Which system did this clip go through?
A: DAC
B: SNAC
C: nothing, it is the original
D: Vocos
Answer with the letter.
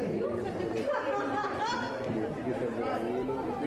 C